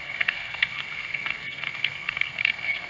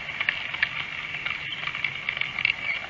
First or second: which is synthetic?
first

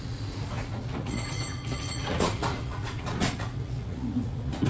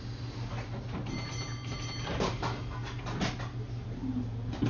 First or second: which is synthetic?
first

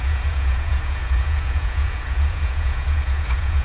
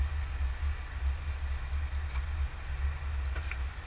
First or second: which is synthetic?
first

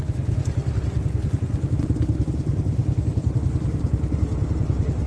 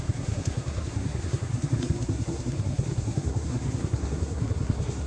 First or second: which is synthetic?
second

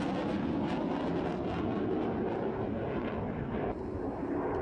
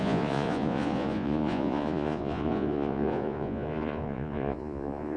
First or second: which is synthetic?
second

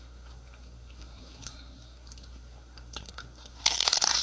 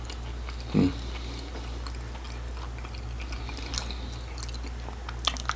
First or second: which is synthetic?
first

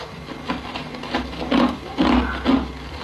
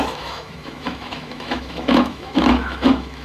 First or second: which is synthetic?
second